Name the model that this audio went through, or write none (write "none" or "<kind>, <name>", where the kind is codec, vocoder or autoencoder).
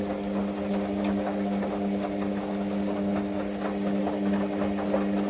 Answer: none